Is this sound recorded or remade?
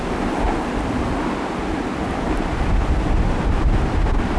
recorded